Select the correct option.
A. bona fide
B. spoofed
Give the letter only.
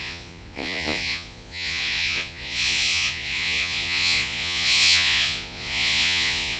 B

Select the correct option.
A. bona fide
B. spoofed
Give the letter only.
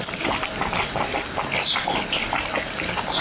A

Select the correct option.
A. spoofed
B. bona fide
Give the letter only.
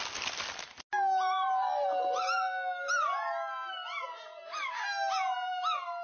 B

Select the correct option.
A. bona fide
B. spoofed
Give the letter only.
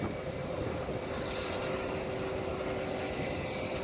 A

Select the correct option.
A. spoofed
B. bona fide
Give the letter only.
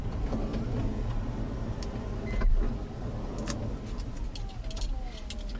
B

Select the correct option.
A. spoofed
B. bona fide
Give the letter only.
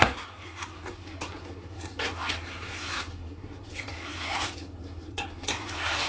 A